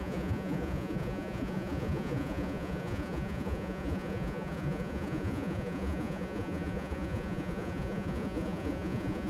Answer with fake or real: fake